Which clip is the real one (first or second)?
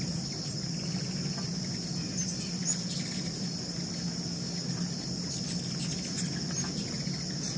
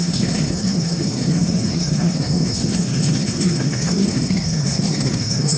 first